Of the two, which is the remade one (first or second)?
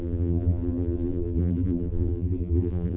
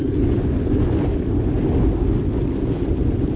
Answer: first